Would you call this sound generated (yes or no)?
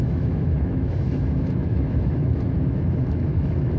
yes